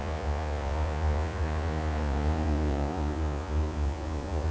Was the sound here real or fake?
fake